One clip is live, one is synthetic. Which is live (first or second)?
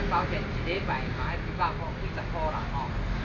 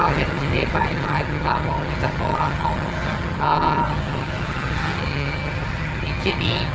first